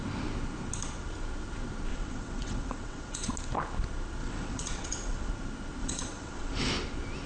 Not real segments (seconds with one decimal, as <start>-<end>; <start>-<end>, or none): 1.9-3.3; 4.2-5.3; 5.8-6.7